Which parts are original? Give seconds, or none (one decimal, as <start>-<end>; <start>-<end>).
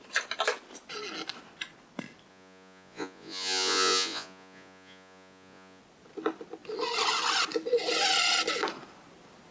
0.0-2.3; 5.8-9.5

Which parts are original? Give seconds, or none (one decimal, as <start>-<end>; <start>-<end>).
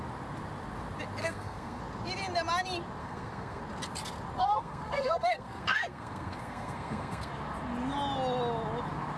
0.0-1.2; 1.8-3.0; 3.6-4.4; 7.3-9.2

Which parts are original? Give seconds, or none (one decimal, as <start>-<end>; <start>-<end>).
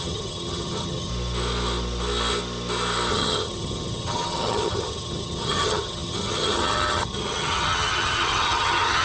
1.1-3.1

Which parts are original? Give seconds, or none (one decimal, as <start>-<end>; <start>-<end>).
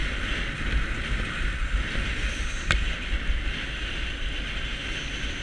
0.0-5.4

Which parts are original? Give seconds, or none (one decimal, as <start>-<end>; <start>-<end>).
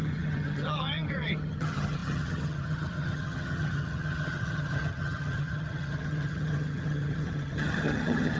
none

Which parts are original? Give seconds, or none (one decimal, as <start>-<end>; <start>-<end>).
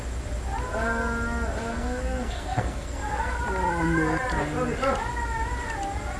0.0-1.7; 3.4-6.2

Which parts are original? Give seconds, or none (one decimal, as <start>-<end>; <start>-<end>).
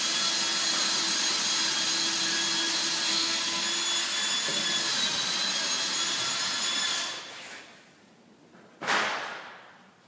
0.0-3.1; 3.6-10.1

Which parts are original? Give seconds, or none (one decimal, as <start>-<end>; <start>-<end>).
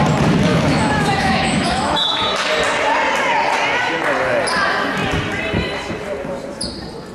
0.0-0.5; 2.2-7.1